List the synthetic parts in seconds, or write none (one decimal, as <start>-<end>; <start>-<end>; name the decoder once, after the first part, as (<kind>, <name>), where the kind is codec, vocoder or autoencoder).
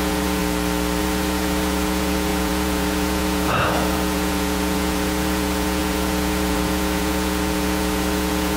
0.0-0.4 (vocoder, Vocos); 1.0-8.6